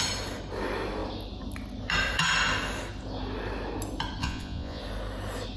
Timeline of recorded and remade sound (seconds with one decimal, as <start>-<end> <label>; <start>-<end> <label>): 0.0-4.2 recorded; 4.2-4.8 remade; 4.8-5.6 recorded